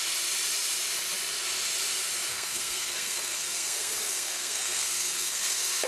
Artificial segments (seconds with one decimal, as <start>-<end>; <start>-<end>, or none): 2.3-5.9